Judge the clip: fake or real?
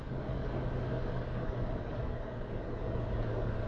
fake